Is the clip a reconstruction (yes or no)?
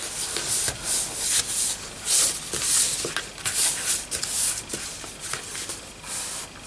no